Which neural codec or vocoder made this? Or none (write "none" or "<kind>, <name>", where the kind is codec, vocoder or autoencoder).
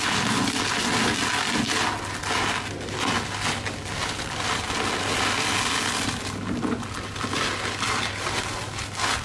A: none